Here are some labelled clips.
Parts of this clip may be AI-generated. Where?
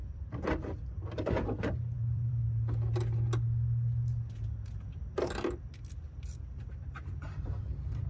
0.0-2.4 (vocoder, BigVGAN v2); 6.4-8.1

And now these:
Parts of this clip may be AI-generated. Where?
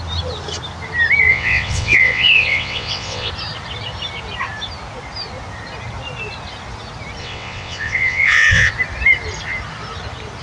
1.3-3.3 (vocoder, WaveNeXt); 7.2-8.7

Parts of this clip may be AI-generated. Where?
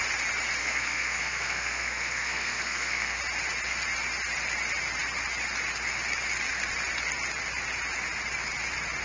0.6-3.2 (codec, SNAC)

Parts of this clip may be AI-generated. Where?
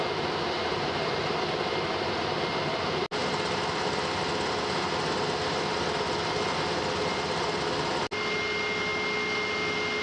0.6-1.3 (vocoder, BigVGAN v2)